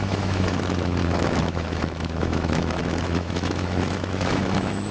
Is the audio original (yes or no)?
no